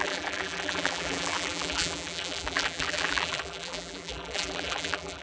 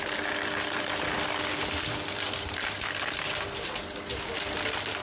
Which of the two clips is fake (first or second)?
first